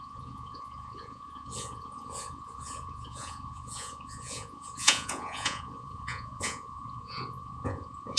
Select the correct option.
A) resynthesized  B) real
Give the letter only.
A